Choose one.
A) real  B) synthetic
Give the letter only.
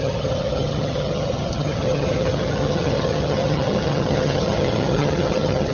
B